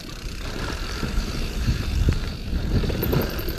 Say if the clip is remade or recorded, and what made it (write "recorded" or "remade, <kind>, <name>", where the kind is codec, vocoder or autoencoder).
remade, vocoder, BigVGAN v2